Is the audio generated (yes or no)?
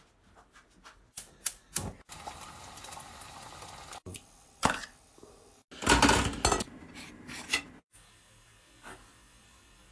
no